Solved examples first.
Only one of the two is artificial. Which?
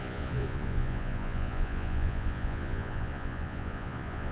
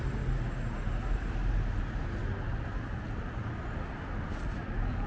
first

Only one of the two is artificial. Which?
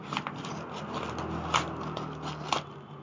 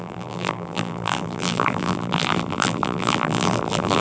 second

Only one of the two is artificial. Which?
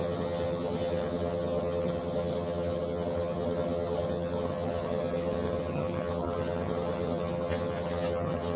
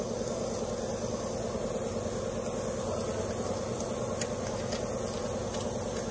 first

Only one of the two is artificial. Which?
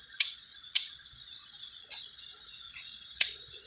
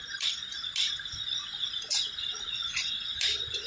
first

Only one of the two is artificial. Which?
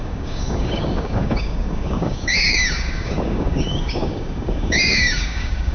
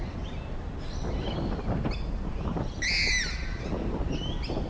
first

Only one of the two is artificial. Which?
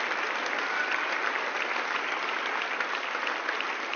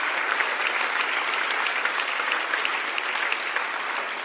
second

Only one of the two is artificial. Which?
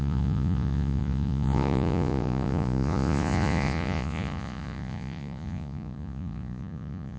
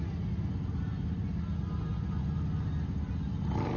first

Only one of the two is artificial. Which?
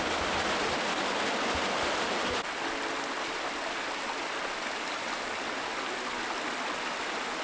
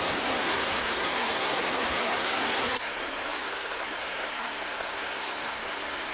second